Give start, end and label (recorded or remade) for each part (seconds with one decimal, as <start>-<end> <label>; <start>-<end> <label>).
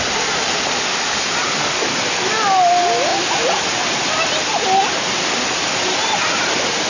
0.0-6.9 recorded